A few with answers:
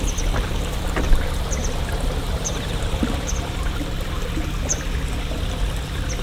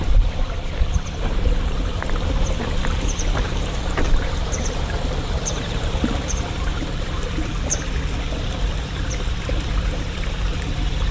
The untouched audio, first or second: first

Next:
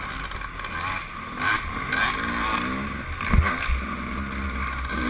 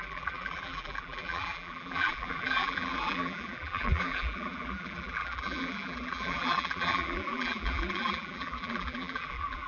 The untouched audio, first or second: first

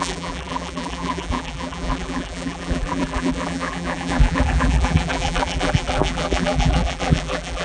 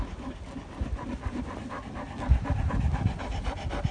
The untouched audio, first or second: second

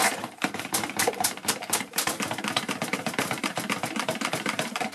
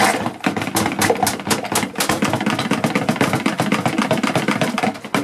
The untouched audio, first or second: second